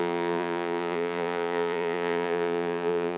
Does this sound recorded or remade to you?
remade